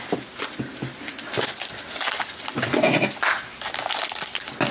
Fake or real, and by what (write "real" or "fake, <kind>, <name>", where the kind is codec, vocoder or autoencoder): real